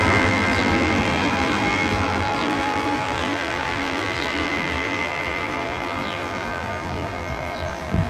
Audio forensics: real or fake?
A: fake